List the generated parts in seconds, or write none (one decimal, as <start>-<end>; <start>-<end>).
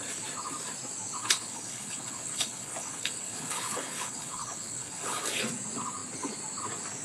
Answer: 1.2-5.4